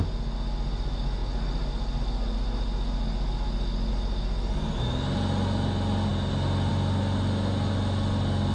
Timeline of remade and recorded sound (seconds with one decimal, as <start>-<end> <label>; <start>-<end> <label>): 0.0-8.5 recorded